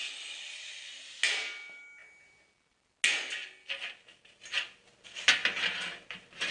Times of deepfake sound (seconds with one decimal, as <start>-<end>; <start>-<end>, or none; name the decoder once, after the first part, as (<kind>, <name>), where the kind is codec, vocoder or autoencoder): none